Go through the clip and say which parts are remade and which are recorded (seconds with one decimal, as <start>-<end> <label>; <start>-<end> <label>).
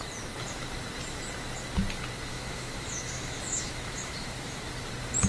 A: 0.0-2.3 recorded; 2.3-4.6 remade; 4.6-5.3 recorded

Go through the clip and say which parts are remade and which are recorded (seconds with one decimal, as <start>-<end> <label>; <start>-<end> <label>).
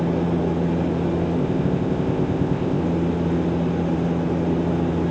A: 0.0-1.4 recorded; 1.4-2.8 remade; 2.8-5.1 recorded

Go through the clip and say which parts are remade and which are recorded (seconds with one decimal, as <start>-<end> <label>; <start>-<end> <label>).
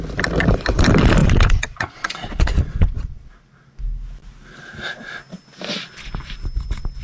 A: 0.0-1.2 recorded; 1.2-3.3 remade; 3.3-7.0 recorded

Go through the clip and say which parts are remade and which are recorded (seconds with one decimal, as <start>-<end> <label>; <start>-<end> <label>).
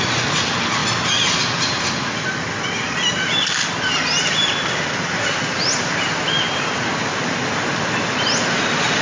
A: 0.0-9.0 recorded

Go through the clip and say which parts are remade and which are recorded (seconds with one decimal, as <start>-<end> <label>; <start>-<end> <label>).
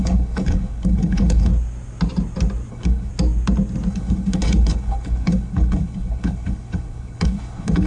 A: 0.0-1.5 remade; 1.5-2.7 recorded; 2.7-3.1 remade; 3.1-3.9 recorded; 3.9-7.9 remade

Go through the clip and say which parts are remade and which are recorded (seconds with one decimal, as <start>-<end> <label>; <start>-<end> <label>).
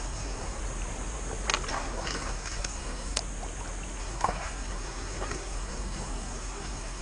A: 0.0-0.6 remade; 0.6-1.7 recorded; 1.7-3.2 remade; 3.2-4.0 recorded; 4.0-7.0 remade